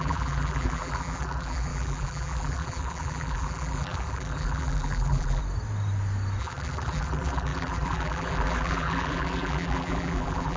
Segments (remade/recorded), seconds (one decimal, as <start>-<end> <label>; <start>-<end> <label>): 0.0-5.4 remade; 5.4-6.4 recorded; 6.4-10.6 remade